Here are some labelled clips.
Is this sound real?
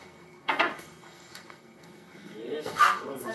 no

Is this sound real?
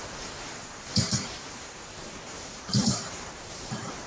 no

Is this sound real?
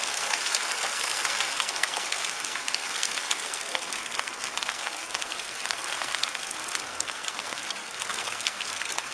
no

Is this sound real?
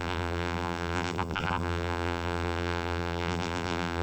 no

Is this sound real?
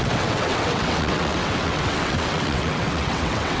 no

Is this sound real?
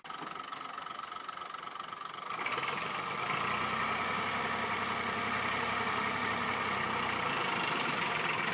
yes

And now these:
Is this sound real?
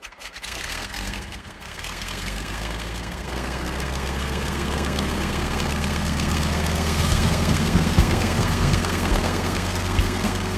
no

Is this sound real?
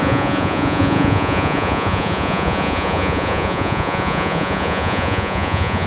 no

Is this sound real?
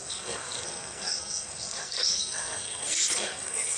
no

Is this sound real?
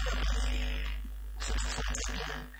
yes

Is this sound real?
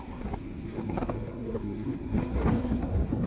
no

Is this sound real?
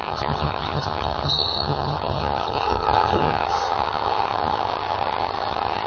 no